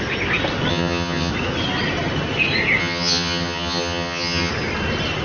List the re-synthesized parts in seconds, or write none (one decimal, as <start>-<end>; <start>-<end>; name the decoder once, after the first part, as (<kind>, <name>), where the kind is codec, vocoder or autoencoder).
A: 0.7-1.3 (vocoder, HiFi-GAN); 2.8-4.5